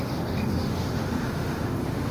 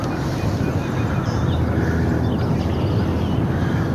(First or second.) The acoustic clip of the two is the second